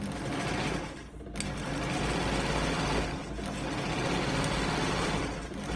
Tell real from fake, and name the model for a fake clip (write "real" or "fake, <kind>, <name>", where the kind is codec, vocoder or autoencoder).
real